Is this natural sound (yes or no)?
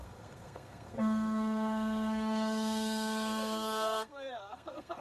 no